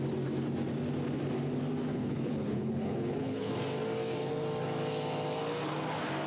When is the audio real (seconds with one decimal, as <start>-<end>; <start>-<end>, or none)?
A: 0.0-1.9; 3.5-6.3

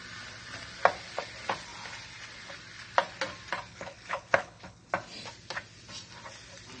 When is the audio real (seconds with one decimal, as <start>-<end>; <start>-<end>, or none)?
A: 0.0-3.7; 4.9-6.8

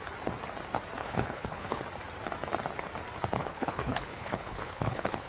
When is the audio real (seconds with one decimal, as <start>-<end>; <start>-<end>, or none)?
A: 0.0-1.0; 1.8-3.4